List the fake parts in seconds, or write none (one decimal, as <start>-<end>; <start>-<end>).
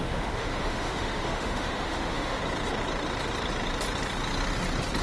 0.0-2.4